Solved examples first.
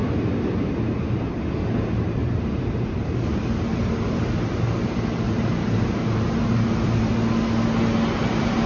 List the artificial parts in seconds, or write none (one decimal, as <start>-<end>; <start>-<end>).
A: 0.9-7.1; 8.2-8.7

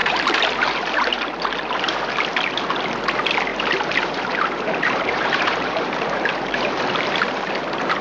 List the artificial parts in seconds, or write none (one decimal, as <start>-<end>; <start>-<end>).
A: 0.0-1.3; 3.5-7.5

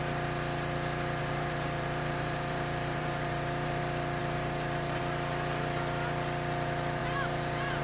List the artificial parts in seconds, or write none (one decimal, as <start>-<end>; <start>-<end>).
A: 1.2-3.8; 4.2-5.0; 7.0-7.8

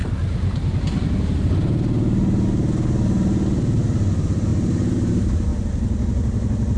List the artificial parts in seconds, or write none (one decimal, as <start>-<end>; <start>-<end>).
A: 4.1-5.5

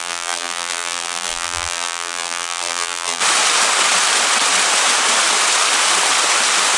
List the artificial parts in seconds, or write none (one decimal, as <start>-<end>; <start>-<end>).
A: 0.0-3.2

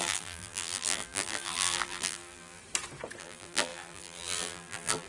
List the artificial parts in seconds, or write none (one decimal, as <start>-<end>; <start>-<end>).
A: 0.0-2.6; 3.2-5.1

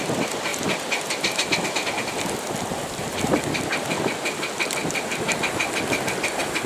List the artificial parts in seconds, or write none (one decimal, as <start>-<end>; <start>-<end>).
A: 0.5-1.2; 3.0-3.8; 4.8-5.4